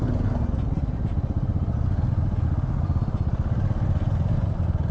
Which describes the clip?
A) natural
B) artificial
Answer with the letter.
A